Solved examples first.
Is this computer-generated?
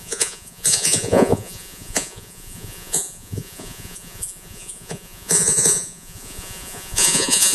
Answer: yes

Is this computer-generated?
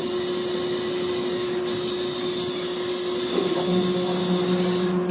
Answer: no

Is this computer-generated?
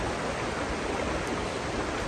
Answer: no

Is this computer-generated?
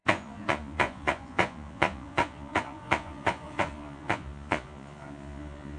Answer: yes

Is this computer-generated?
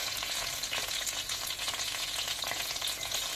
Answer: yes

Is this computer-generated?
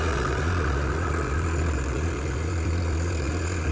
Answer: yes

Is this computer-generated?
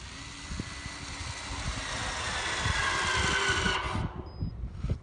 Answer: no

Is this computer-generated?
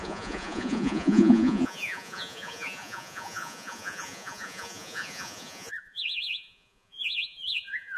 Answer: yes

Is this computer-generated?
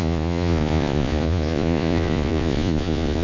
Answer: yes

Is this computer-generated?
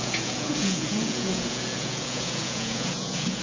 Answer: yes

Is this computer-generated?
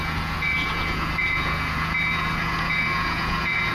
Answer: yes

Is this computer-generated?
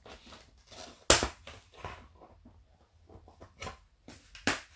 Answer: no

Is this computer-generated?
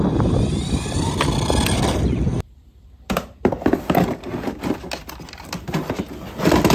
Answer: no